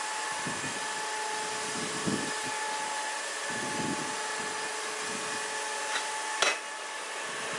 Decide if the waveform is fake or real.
real